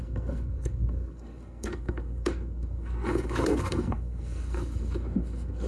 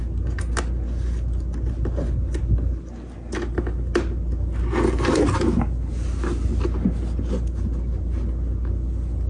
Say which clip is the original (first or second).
second